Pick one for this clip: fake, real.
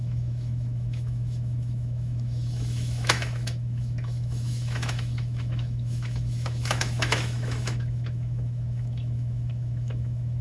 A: fake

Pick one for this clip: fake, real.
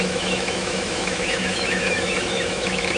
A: fake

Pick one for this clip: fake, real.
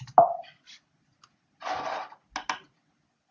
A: real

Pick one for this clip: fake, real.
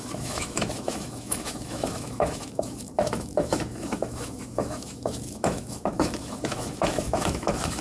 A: fake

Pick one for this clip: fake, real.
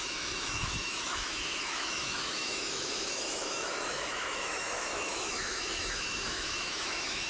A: fake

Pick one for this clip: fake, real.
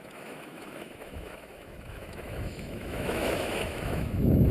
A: fake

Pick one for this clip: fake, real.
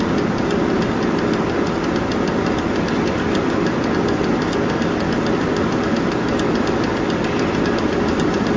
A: real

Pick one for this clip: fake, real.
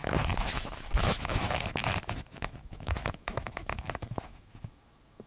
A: fake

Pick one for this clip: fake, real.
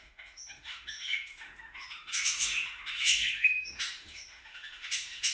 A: fake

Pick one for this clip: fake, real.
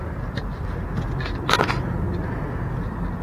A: real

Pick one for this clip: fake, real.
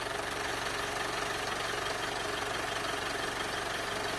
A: real